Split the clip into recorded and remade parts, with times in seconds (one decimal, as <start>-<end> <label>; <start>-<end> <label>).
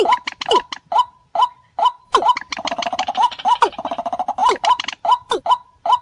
0.0-2.5 recorded; 2.5-3.1 remade; 3.1-4.4 recorded; 4.4-5.5 remade; 5.5-6.0 recorded